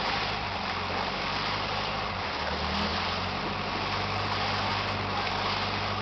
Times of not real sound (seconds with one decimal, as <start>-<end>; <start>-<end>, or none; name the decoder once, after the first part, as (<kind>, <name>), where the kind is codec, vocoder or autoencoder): none